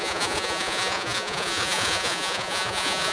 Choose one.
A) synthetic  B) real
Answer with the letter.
A